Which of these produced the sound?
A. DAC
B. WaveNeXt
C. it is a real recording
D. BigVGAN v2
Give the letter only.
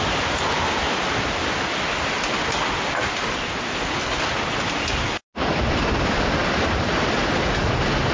C